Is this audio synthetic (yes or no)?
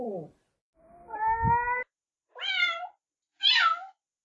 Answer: no